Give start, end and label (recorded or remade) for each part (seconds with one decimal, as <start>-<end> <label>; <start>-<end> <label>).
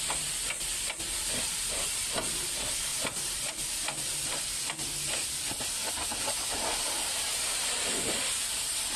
0.0-1.8 recorded; 1.8-2.5 remade; 2.5-2.9 recorded; 2.9-3.7 remade; 3.7-9.0 recorded